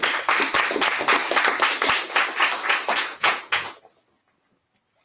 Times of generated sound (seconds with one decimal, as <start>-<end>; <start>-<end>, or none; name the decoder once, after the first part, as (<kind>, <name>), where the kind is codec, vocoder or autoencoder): 3.0-3.8 (vocoder, Vocos)